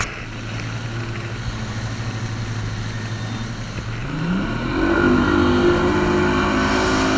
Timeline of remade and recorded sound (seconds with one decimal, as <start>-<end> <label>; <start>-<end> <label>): 0.0-7.2 recorded